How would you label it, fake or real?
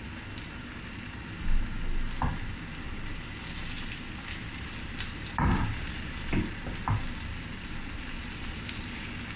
real